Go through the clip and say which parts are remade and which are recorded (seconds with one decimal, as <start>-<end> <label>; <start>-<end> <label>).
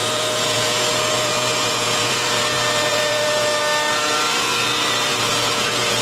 0.0-3.6 remade; 3.6-5.1 recorded; 5.1-6.0 remade